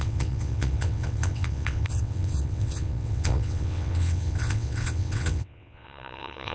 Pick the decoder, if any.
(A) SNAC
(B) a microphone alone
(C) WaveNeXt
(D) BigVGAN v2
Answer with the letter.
C